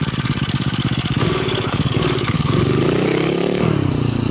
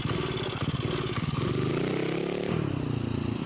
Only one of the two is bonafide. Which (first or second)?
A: second